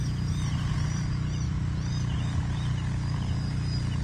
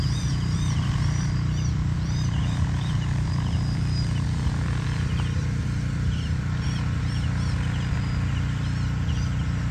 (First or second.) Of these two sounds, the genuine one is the first